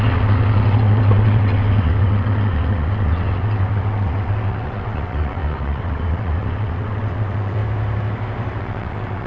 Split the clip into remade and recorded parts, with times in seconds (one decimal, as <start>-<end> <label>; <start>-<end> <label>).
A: 0.0-7.6 remade; 7.6-8.6 recorded; 8.6-9.3 remade